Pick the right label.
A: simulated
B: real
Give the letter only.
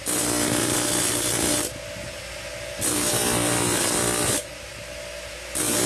B